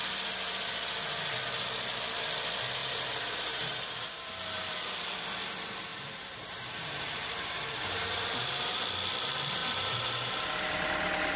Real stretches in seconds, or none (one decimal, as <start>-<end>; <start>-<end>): 0.0-2.8; 4.8-5.9; 8.8-9.6; 10.3-11.4

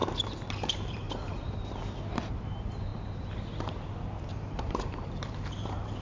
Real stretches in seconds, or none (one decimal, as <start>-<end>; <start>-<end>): 0.0-0.9

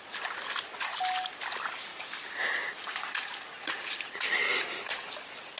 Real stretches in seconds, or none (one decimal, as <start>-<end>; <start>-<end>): 0.0-5.6

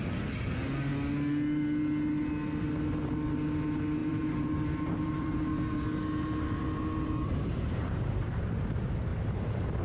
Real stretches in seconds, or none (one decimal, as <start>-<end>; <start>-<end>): 0.0-4.0; 8.4-9.1